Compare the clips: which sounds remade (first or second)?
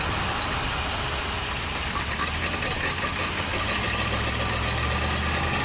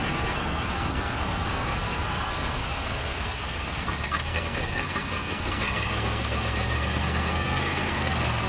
second